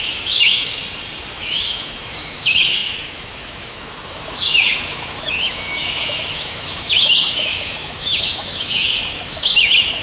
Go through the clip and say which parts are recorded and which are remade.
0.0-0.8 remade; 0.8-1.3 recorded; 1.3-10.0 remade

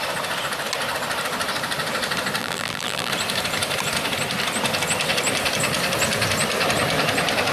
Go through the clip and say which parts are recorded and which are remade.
0.0-2.4 recorded; 2.4-3.1 remade; 3.1-7.5 recorded